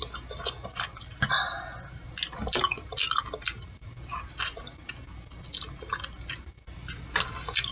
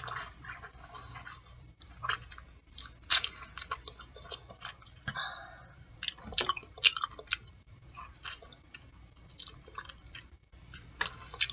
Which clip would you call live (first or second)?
first